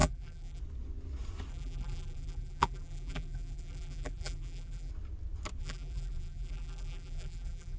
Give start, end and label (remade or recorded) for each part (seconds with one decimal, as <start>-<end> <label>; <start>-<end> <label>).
0.0-0.6 remade; 0.6-1.5 recorded; 1.5-4.9 remade; 4.9-5.6 recorded; 5.6-7.8 remade